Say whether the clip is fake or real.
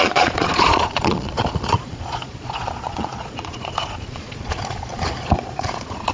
fake